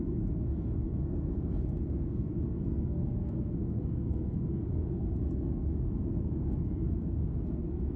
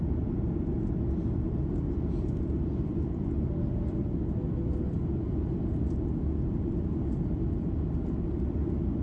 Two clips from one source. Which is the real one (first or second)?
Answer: second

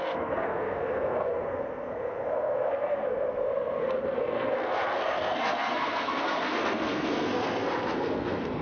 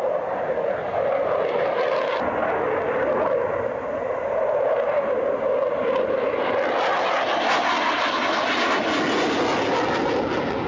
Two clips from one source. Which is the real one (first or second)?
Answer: second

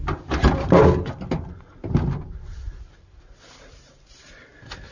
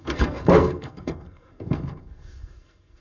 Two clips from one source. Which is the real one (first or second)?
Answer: first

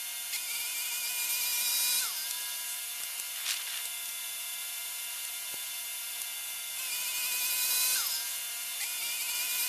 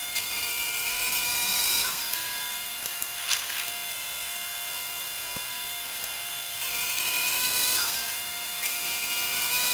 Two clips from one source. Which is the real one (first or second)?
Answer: first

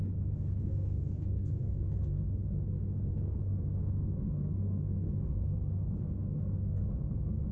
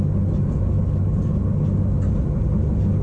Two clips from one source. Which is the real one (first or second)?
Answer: second